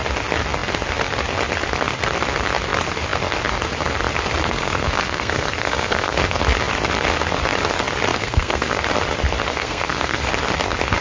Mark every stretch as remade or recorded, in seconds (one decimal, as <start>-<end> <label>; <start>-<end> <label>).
0.0-4.4 recorded; 4.4-6.4 remade; 6.4-8.2 recorded; 8.2-8.8 remade; 8.8-9.5 recorded; 9.5-10.3 remade; 10.3-11.0 recorded